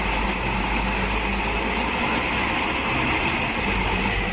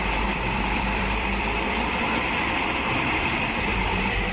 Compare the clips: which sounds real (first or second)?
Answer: first